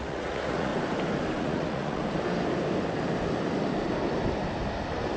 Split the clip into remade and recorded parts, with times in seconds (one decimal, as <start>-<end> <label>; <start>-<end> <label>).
0.0-0.7 remade; 0.7-1.4 recorded; 1.4-2.0 remade; 2.0-5.2 recorded